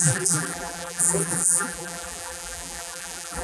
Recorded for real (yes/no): no